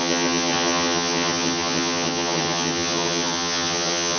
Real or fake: fake